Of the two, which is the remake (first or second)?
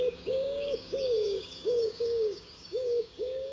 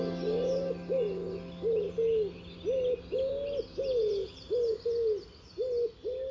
first